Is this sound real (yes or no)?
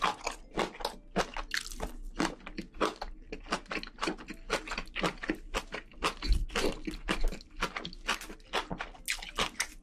yes